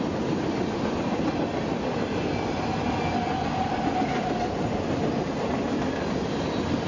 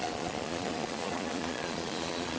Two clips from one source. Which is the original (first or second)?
first